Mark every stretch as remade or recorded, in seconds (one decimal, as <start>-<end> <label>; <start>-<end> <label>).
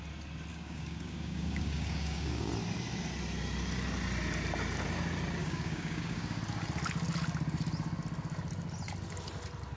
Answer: 0.0-0.5 recorded; 0.5-2.5 remade; 2.5-5.4 recorded; 5.4-6.4 remade; 6.4-9.8 recorded